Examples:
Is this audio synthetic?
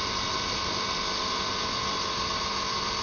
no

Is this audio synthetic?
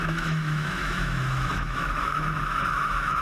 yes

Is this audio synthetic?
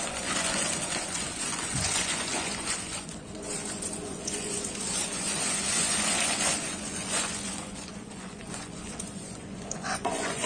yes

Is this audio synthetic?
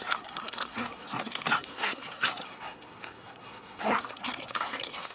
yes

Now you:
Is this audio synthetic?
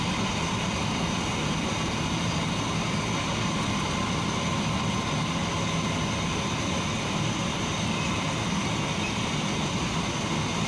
no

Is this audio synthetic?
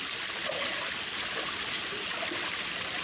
no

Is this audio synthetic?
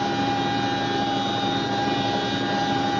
no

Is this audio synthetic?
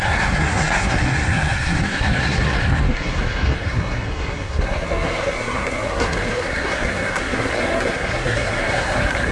yes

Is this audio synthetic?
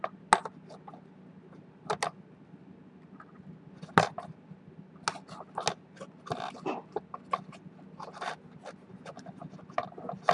no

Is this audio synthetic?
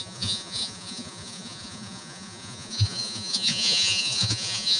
yes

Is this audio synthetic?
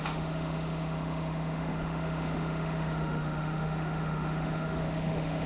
yes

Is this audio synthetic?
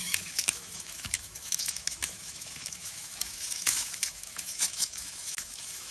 yes